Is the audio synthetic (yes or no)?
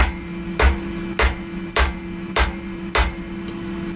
no